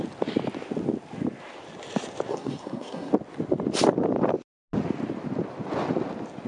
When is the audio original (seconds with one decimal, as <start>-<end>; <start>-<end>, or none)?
0.0-2.3; 3.1-6.5